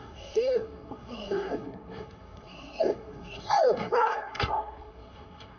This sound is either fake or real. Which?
fake